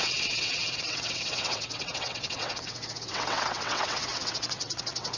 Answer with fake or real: fake